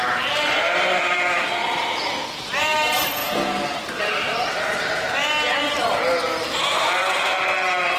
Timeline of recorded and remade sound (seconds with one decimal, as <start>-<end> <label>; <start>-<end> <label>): 0.0-1.6 remade; 1.6-2.3 recorded; 2.3-5.2 remade; 5.2-8.0 recorded